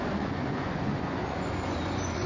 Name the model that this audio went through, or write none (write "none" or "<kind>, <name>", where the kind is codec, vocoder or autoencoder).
vocoder, Vocos